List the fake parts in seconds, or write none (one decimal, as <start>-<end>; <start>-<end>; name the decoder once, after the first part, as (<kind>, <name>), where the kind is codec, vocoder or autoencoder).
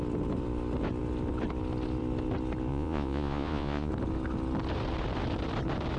2.7-3.9 (vocoder, Vocos)